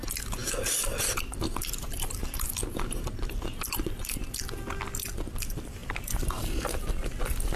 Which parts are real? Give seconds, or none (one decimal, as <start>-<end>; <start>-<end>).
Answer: 0.0-7.6